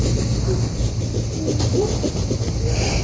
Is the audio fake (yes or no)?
no